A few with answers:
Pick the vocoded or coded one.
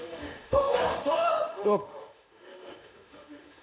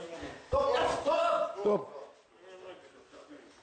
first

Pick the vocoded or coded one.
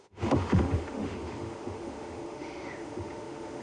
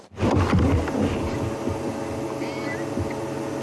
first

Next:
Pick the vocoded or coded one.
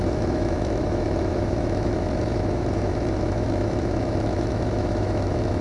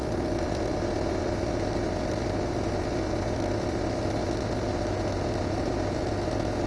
first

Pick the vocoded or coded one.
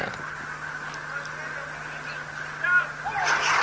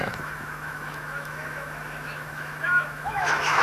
second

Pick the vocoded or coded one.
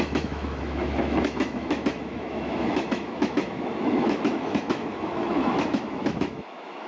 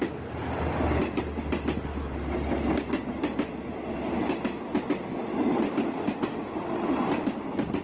first